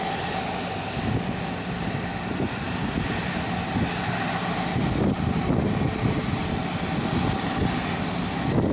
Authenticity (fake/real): real